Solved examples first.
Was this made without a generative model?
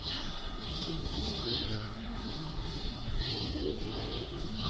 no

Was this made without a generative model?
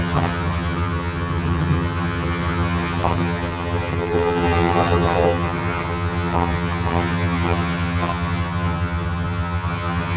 no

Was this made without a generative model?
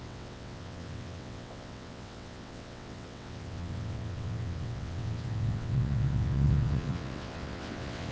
no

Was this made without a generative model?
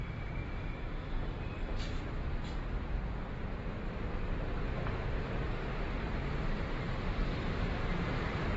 no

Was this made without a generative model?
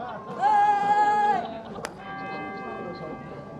yes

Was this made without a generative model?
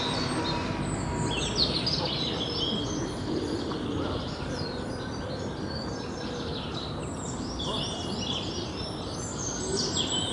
yes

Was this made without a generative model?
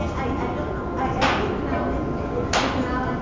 yes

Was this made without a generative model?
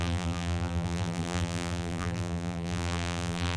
no